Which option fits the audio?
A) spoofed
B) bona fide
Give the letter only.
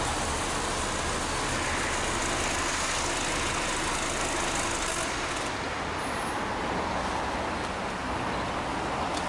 B